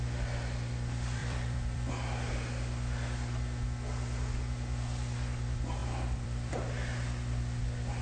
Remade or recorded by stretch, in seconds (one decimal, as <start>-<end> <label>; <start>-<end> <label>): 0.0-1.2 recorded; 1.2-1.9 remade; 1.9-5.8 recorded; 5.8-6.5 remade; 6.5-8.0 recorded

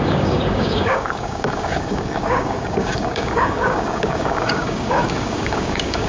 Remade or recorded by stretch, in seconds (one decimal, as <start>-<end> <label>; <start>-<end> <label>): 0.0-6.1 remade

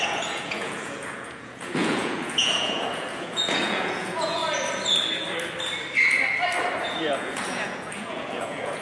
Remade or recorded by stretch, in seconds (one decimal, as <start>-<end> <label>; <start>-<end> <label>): 0.0-4.4 remade; 4.4-6.9 recorded; 6.9-8.8 remade

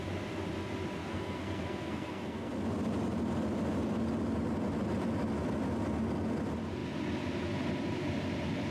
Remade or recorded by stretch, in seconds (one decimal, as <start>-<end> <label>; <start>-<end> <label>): 0.0-1.0 recorded; 1.0-2.5 remade; 2.5-8.7 recorded

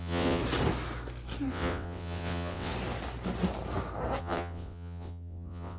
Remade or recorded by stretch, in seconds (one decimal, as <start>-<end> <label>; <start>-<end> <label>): 0.0-0.4 remade; 0.4-1.5 recorded; 1.5-2.7 remade; 2.7-4.2 recorded; 4.2-5.8 remade